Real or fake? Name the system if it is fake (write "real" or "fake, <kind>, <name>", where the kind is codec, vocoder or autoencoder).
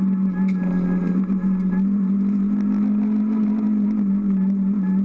real